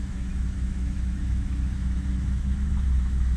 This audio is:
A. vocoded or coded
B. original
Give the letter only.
A